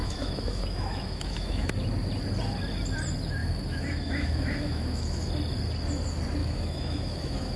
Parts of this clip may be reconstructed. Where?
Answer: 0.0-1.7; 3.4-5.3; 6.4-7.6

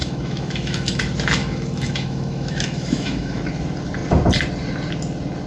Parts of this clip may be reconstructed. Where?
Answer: 0.0-1.0; 1.4-3.4

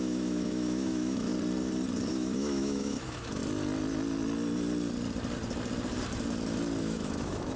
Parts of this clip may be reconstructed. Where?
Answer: 0.0-1.3; 2.1-3.4; 6.8-7.6

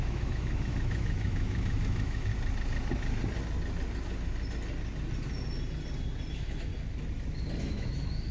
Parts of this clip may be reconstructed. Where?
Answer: 0.0-2.3; 6.3-6.7; 7.6-8.3

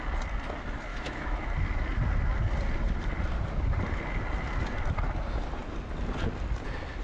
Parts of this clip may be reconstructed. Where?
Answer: 0.9-1.5

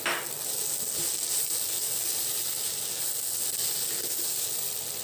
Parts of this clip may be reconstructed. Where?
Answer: none